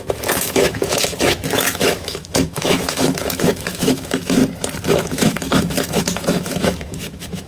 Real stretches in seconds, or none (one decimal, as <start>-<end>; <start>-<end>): 4.4-4.9

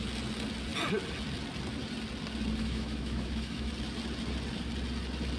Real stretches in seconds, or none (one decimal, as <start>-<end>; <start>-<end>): 0.0-2.6; 3.7-5.4

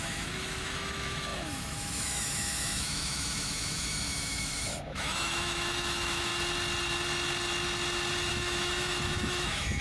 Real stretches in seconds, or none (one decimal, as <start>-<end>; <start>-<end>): 6.3-8.3

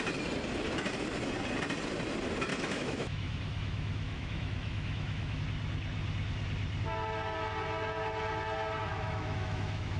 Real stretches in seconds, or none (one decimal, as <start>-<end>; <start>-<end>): 0.0-2.5; 5.4-8.8

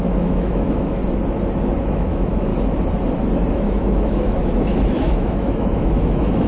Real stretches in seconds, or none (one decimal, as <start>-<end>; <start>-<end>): 1.0-1.8; 2.5-3.5

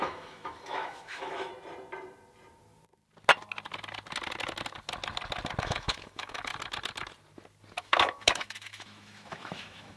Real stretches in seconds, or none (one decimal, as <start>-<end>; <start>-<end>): 1.5-5.6; 6.5-7.8

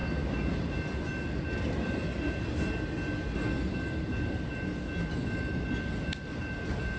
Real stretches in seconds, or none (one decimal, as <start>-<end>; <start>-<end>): 0.0-7.0